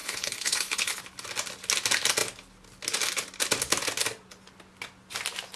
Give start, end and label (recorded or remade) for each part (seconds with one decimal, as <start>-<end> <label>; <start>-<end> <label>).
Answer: 0.0-1.0 remade; 1.0-5.6 recorded